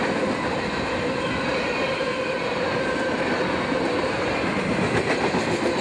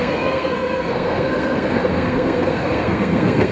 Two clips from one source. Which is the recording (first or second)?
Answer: first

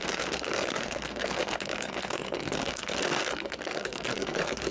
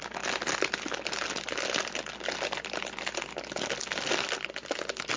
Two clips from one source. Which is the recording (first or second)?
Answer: second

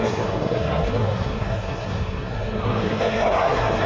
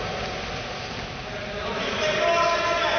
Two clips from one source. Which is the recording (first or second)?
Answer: second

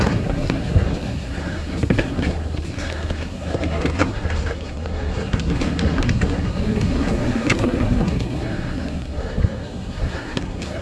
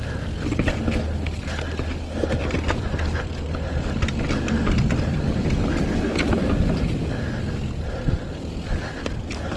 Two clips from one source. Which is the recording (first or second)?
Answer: second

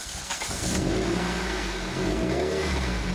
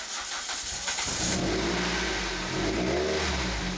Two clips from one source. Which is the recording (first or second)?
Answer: second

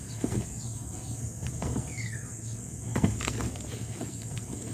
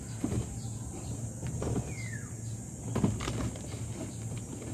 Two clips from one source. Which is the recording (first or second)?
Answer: second